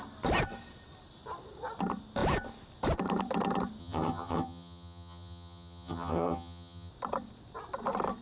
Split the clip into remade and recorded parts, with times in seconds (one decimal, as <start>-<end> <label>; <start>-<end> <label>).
0.0-3.8 recorded; 3.8-6.9 remade; 6.9-8.2 recorded